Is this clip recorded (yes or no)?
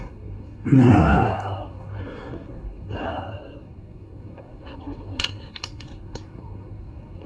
no